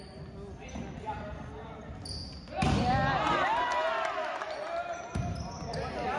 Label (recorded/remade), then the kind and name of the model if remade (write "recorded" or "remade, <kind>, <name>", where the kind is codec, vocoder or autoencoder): recorded